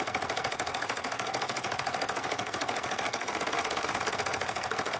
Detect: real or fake fake